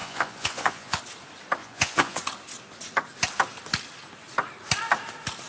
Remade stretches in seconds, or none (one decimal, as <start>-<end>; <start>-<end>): 0.0-1.0; 1.6-2.2